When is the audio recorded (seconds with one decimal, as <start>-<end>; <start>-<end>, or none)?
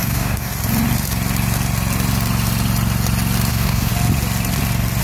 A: 0.5-3.5; 3.9-5.0